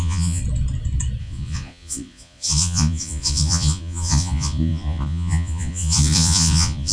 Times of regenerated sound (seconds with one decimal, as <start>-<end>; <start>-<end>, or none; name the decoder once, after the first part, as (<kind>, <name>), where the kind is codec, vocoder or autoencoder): 0.0-0.4 (vocoder, Vocos); 1.2-6.9